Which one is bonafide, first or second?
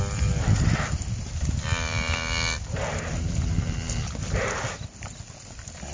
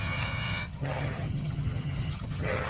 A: first